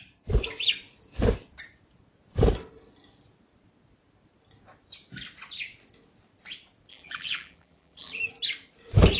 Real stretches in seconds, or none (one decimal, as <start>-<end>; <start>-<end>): 0.0-6.9; 8.2-9.2